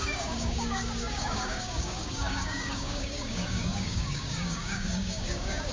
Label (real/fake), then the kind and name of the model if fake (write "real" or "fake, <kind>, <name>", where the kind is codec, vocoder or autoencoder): fake, codec, DAC